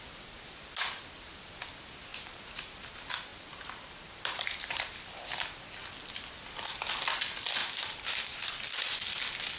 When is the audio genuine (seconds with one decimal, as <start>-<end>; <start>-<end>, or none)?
0.0-2.1; 2.7-3.3; 5.2-7.6; 8.6-9.6